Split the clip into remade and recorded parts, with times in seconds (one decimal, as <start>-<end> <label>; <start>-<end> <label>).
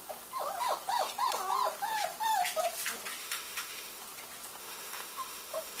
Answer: 0.0-3.2 recorded; 3.2-4.0 remade; 4.0-4.6 recorded; 4.6-5.8 remade